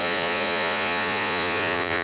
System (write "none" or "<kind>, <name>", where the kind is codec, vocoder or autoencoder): vocoder, Vocos